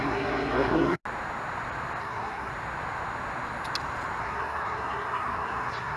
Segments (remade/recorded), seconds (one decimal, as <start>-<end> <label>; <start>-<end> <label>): 0.0-1.0 remade; 1.0-2.0 recorded; 2.0-2.5 remade; 2.5-4.2 recorded; 4.2-6.0 remade